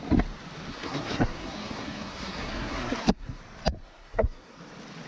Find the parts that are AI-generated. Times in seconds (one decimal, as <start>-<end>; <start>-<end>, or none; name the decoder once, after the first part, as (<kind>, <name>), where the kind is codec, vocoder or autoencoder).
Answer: 0.7-3.4 (codec, SNAC); 3.8-4.6